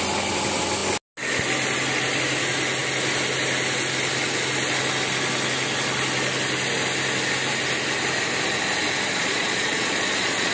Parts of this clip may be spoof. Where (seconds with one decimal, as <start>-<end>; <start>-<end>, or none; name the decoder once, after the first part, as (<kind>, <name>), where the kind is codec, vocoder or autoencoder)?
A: 9.1-10.5 (vocoder, Vocos)